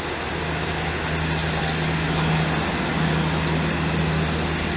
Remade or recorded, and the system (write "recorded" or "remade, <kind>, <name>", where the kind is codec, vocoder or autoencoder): recorded